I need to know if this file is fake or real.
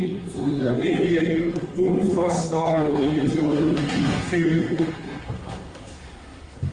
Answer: fake